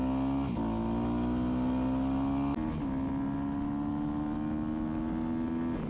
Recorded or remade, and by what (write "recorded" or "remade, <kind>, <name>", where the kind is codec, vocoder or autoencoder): recorded